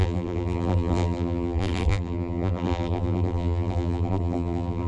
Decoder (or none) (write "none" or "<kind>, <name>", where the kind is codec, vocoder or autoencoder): vocoder, BigVGAN v2